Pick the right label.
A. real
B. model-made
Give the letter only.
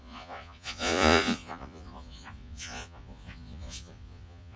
B